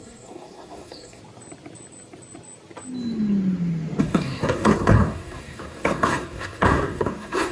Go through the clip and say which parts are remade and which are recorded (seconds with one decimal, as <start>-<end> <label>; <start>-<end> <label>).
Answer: 0.0-1.2 remade; 1.2-4.0 recorded; 4.0-7.5 remade

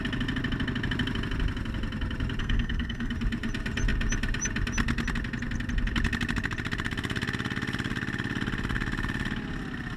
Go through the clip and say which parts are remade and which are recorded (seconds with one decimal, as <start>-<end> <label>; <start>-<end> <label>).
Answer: 0.0-2.4 recorded; 2.4-3.1 remade; 3.1-10.0 recorded